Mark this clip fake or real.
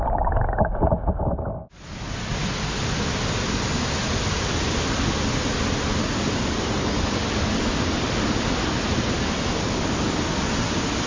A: real